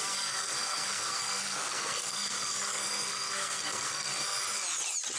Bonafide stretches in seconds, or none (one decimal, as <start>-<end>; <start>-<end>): 4.1-5.2